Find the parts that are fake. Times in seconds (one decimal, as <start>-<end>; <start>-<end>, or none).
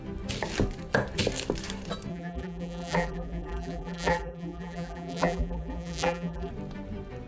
2.1-6.5